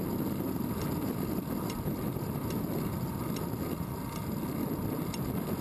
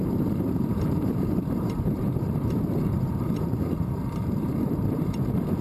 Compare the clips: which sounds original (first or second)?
first